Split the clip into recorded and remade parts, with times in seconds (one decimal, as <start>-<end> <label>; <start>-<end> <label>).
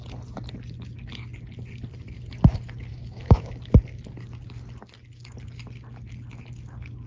0.0-2.9 recorded; 2.9-3.5 remade; 3.5-7.1 recorded